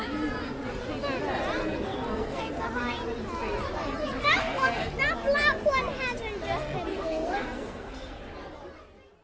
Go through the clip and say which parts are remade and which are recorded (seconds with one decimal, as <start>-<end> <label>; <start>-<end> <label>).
0.0-1.6 recorded; 1.6-2.4 remade; 2.4-4.4 recorded; 4.4-4.9 remade; 4.9-6.9 recorded; 6.9-8.2 remade; 8.2-9.2 recorded